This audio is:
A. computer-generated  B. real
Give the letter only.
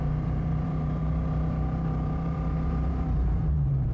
A